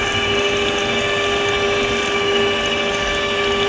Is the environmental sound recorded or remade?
recorded